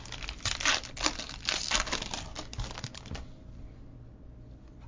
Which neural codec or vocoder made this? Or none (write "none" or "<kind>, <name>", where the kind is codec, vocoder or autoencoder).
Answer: none